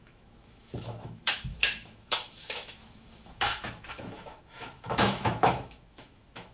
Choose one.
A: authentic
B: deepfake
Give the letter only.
B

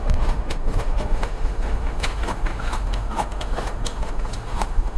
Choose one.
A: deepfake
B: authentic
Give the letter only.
A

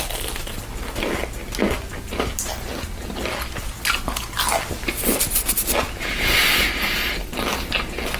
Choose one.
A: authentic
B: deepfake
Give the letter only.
A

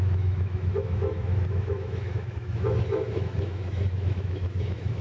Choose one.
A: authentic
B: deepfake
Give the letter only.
B